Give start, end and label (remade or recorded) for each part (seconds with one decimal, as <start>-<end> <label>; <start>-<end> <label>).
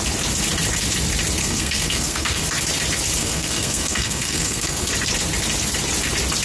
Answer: 0.0-1.4 recorded; 1.4-2.4 remade; 2.4-3.2 recorded; 3.2-4.9 remade; 4.9-6.4 recorded